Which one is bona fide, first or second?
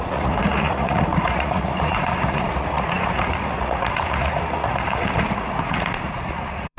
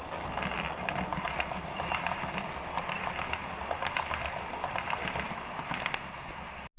second